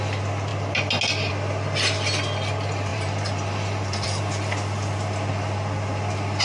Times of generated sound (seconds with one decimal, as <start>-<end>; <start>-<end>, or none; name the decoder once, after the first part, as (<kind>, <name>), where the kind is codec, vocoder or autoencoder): 2.9-4.2 (vocoder, BigVGAN v2)